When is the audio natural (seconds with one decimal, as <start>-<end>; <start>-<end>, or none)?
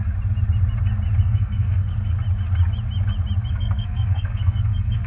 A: 0.0-1.2; 1.8-3.5